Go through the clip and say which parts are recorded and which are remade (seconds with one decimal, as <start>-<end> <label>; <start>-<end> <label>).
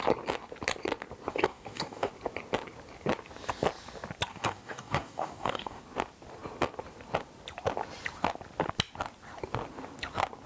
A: 0.0-1.3 recorded; 1.3-2.1 remade; 2.1-4.3 recorded; 4.3-5.8 remade; 5.8-10.5 recorded